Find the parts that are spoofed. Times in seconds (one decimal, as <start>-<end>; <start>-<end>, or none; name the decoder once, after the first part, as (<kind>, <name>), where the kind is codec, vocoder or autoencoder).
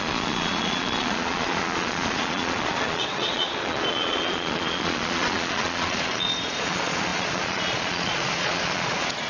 0.0-9.3 (vocoder, Vocos)